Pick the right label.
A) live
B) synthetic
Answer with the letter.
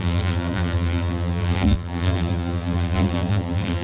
B